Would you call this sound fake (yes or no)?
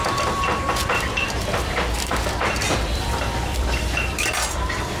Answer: yes